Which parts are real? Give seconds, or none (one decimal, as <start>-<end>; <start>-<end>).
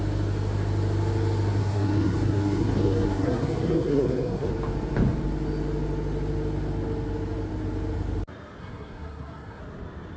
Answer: 0.0-1.6; 4.5-8.6; 9.6-10.2